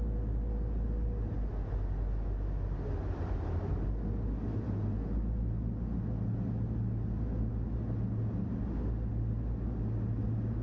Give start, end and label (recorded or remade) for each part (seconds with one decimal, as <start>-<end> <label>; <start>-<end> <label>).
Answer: 0.0-10.6 recorded